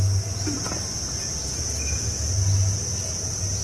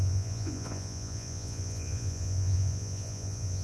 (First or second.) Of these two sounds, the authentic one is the first